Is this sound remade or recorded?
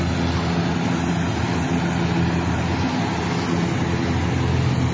recorded